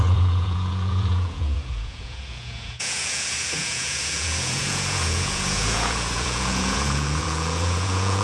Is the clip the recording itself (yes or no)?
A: no